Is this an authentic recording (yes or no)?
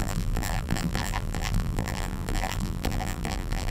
no